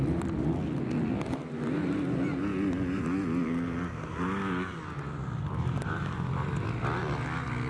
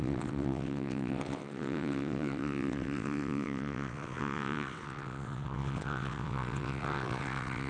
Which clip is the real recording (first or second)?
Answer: first